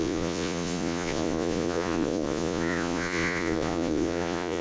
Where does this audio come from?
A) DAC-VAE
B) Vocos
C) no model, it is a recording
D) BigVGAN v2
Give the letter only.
B